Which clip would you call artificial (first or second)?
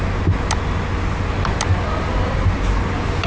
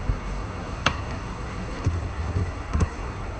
second